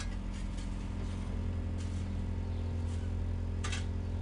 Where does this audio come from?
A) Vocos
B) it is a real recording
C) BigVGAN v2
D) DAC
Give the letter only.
B